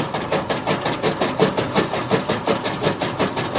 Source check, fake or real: real